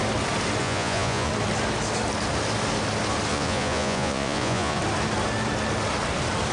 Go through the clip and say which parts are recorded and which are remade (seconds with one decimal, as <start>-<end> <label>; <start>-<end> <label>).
0.0-0.6 recorded; 0.6-1.3 remade; 1.3-3.3 recorded; 3.3-4.8 remade; 4.8-6.5 recorded